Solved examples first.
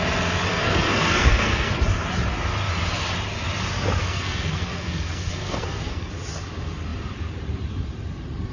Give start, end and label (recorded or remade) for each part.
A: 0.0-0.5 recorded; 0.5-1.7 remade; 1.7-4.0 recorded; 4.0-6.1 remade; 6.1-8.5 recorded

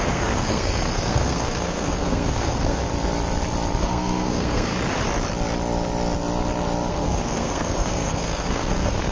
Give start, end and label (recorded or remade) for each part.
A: 0.0-2.8 remade; 2.8-3.8 recorded; 3.8-4.7 remade; 4.7-6.9 recorded; 6.9-9.1 remade

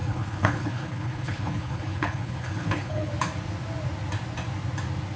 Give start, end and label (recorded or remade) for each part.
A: 0.0-3.1 remade; 3.1-5.2 recorded

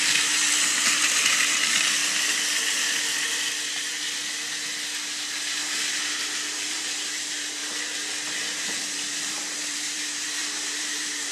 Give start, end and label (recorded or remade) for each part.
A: 0.0-2.0 remade; 2.0-6.6 recorded; 6.6-7.6 remade; 7.6-8.3 recorded; 8.3-11.3 remade

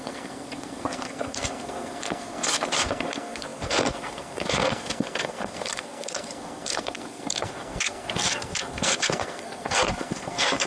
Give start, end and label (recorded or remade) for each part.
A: 0.0-10.7 remade

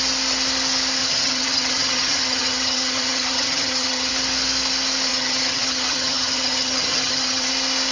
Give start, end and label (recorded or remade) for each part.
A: 0.0-1.0 recorded; 1.0-4.1 remade; 4.1-5.1 recorded; 5.1-7.5 remade; 7.5-7.9 recorded

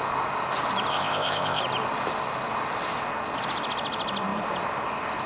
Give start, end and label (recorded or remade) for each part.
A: 0.0-0.9 recorded; 0.9-1.6 remade; 1.6-5.3 recorded

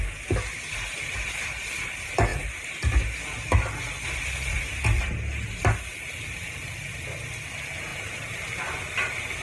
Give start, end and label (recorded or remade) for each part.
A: 0.0-9.4 recorded